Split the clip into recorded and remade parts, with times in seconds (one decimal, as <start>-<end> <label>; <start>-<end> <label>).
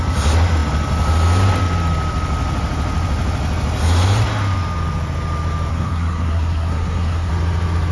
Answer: 0.0-5.7 recorded; 5.7-7.3 remade; 7.3-7.9 recorded